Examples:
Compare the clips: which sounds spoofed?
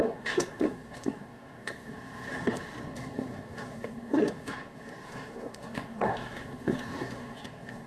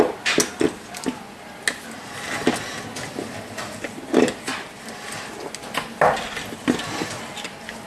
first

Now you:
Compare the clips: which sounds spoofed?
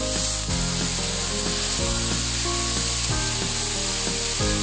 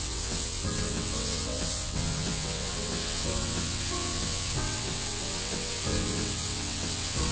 second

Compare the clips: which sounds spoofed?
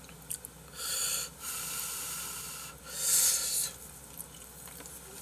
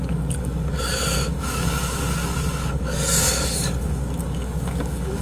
second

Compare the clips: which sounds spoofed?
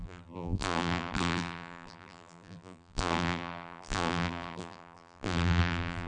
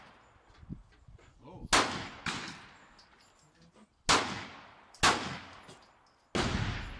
first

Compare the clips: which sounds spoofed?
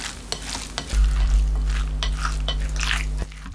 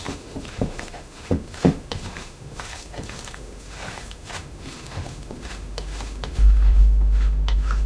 second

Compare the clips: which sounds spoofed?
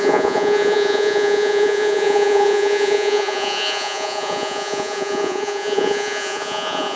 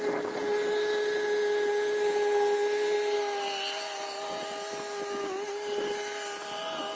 first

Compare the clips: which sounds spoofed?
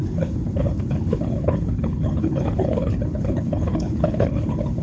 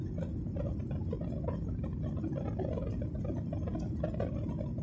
first